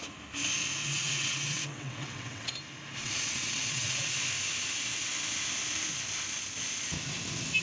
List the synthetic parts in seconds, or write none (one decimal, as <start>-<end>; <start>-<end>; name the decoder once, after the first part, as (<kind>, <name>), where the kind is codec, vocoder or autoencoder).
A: 0.8-2.5 (vocoder, WaveNeXt); 3.0-4.1